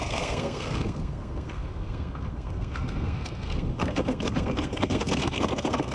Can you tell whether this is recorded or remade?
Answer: remade